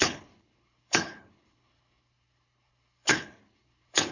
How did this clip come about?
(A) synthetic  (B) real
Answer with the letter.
A